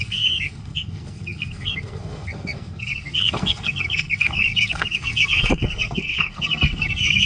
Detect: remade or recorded remade